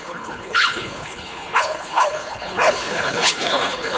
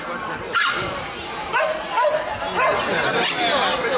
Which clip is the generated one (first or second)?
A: first